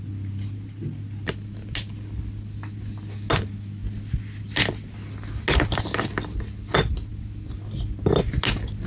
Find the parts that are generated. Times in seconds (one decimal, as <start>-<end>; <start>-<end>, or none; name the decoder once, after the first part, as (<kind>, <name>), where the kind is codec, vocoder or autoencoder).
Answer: none